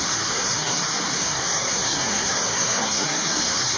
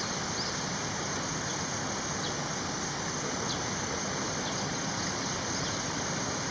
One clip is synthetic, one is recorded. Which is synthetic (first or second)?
first